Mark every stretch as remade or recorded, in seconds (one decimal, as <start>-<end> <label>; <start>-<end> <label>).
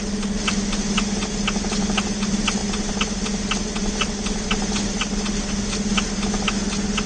0.0-7.1 recorded